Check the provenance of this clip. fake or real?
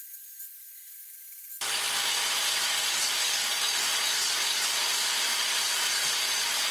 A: real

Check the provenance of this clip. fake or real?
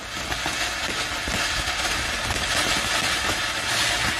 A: real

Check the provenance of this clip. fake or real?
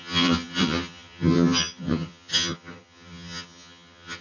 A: fake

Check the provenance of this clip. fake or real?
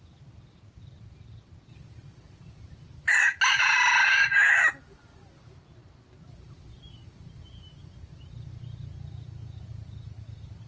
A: real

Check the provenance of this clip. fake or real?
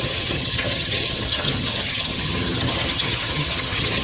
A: fake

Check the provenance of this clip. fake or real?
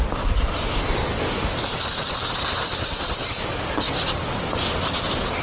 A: real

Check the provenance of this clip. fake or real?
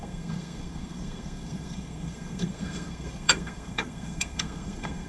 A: fake